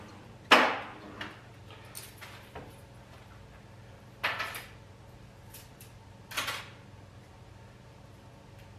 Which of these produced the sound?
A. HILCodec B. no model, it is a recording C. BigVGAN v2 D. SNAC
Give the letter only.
B